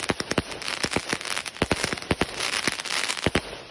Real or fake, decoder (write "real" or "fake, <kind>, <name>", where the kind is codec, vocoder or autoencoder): real